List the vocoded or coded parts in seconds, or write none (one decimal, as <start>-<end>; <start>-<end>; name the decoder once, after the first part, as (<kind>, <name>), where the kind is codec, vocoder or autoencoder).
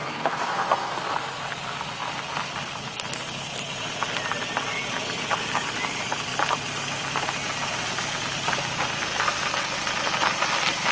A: 0.0-1.0 (codec, SNAC)